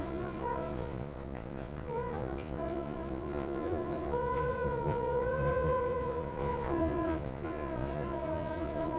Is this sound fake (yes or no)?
yes